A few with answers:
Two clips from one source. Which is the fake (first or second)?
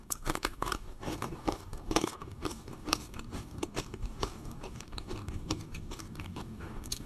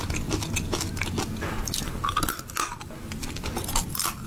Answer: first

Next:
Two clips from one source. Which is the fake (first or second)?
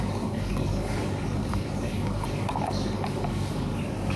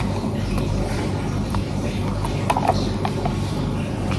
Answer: first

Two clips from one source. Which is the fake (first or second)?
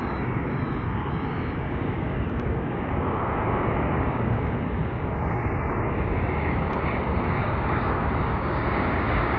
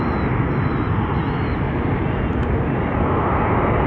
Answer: first